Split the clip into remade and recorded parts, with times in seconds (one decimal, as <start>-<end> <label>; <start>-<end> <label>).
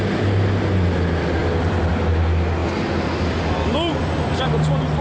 0.0-5.0 recorded